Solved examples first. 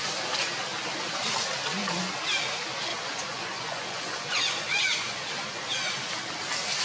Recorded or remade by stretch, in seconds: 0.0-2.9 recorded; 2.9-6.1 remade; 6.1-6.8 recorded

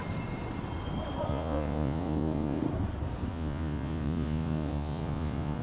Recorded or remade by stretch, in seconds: 0.0-1.3 recorded; 1.3-2.6 remade; 2.6-3.3 recorded; 3.3-5.6 remade